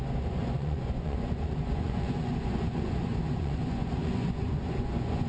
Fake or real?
fake